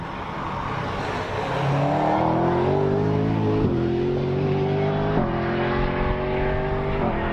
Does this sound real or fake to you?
real